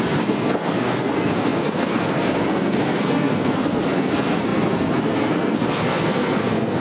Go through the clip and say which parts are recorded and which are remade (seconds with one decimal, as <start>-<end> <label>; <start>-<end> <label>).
0.0-6.8 remade